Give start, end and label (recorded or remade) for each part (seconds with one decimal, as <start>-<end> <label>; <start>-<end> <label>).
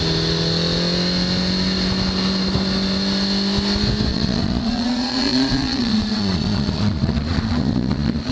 0.0-4.1 recorded; 4.1-8.3 remade